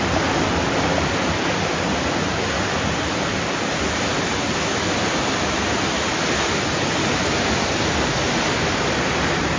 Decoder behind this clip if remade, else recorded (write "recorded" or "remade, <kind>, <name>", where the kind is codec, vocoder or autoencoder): recorded